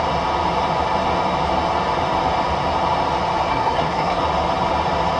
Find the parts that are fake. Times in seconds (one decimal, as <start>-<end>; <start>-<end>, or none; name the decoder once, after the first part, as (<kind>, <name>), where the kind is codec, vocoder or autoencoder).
3.5-4.2 (codec, SNAC)